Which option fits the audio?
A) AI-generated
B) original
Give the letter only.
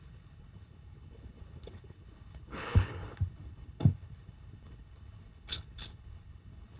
A